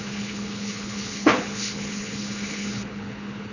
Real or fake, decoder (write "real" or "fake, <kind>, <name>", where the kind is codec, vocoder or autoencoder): fake, codec, HILCodec